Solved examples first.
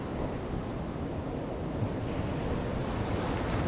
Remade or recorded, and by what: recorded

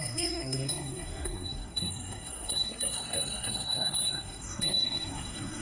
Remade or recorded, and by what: remade, codec, SNAC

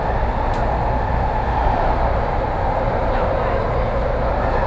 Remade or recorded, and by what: recorded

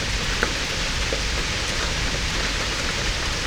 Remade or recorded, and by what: remade, vocoder, BigVGAN v2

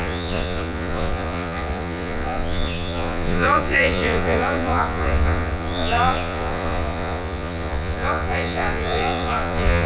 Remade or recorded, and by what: remade, vocoder, Vocos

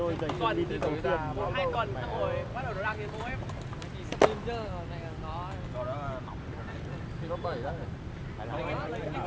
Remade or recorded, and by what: recorded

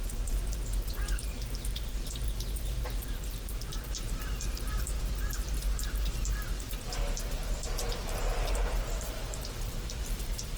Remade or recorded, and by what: remade, vocoder, BigVGAN v2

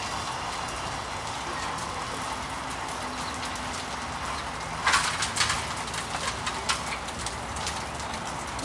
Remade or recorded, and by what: recorded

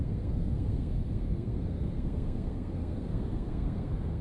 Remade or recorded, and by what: remade, codec, SNAC